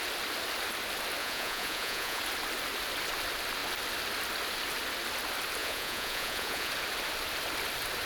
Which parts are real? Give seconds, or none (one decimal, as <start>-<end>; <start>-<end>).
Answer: 0.0-1.2; 2.2-5.6; 6.7-8.1